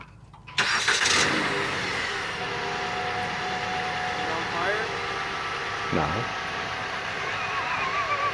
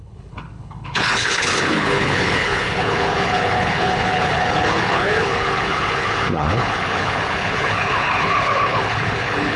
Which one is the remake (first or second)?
second